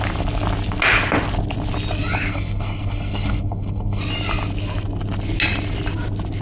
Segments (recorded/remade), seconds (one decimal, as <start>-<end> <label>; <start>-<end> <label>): 0.0-2.3 recorded; 2.3-4.0 remade; 4.0-6.4 recorded